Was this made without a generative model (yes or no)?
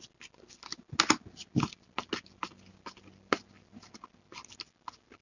yes